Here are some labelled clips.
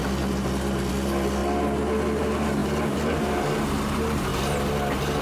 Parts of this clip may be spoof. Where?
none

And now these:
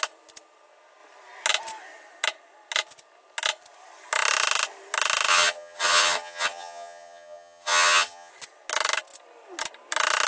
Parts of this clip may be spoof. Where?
5.3-8.3 (vocoder, HiFi-GAN)

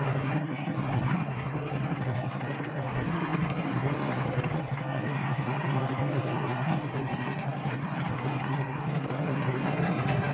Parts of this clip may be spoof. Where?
0.0-10.3 (codec, SNAC)

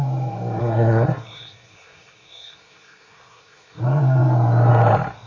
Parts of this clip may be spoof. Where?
0.6-3.8 (codec, SNAC)

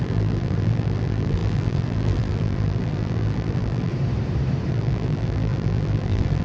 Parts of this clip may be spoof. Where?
0.0-3.9 (vocoder, BigVGAN v2); 4.7-6.4

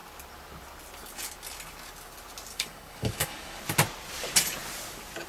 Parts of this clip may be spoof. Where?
2.5-3.6 (codec, DAC)

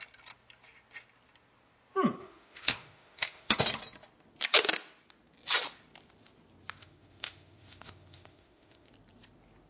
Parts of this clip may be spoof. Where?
2.2-3.5 (autoencoder, DAC-VAE); 6.8-8.9